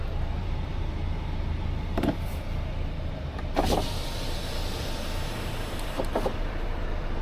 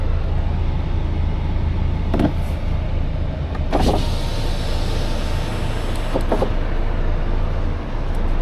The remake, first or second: first